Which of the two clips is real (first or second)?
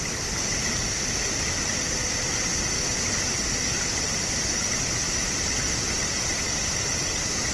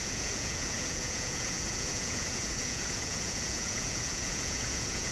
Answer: first